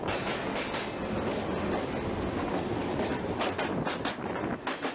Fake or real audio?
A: real